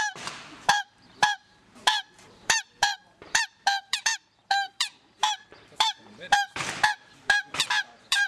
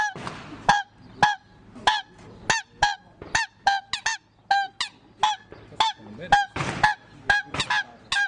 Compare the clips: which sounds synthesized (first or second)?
first